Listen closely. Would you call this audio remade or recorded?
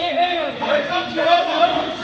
remade